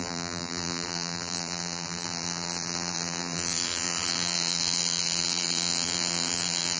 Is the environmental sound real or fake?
fake